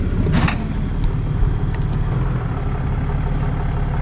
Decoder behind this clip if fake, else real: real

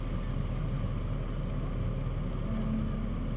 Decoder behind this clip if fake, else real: real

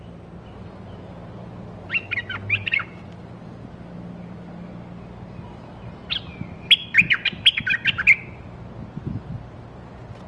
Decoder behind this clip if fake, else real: real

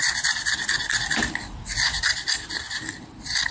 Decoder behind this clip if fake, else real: real